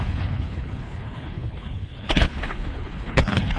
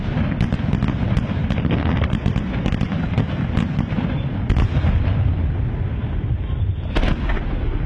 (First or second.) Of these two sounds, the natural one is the second